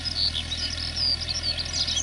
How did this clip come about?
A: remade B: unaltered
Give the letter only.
B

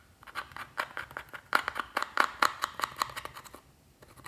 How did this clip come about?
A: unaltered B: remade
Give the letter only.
A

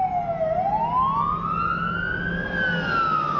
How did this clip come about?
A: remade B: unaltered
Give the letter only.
B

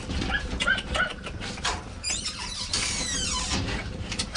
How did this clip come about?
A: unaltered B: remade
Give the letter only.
B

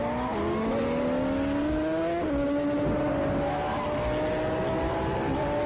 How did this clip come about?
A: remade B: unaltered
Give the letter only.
B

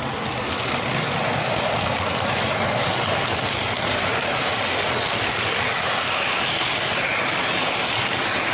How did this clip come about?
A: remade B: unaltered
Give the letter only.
B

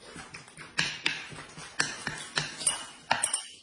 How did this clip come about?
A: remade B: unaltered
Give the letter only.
B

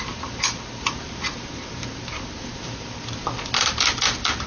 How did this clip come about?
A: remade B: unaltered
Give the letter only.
A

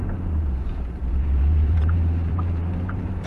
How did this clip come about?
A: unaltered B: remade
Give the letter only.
B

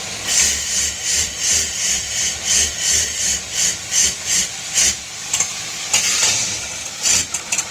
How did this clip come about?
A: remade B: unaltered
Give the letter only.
B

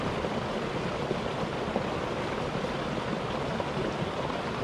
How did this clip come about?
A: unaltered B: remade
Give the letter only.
A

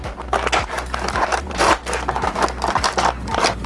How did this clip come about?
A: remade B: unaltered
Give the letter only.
B